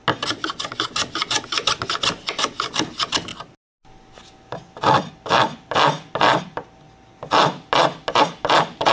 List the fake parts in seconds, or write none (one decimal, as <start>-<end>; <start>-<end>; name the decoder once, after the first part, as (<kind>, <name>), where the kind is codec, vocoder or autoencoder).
none